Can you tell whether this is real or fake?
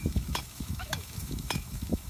fake